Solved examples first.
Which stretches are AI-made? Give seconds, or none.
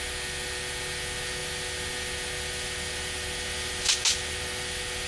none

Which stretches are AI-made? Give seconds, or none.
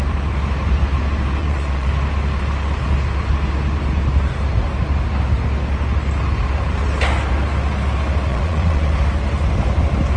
1.4-1.9 (vocoder, Vocos); 8.3-8.9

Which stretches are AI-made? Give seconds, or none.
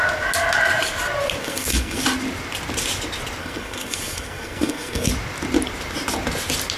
1.4-2.0 (codec, SNAC); 3.4-5.1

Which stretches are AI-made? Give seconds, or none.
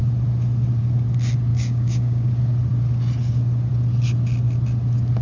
1.5-2.3 (codec, DAC)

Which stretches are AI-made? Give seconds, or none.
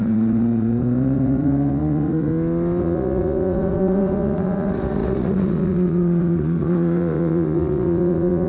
0.0-2.3 (vocoder, Vocos); 2.8-8.5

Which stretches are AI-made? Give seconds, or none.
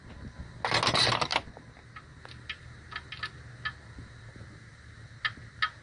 none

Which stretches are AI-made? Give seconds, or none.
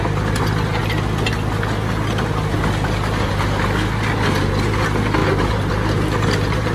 none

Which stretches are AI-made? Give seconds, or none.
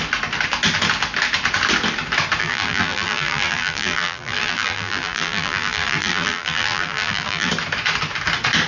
2.4-7.5 (vocoder, BigVGAN v2)